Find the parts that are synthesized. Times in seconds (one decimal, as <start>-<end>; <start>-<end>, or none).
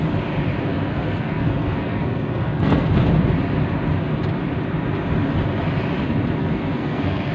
0.7-2.9; 6.4-7.3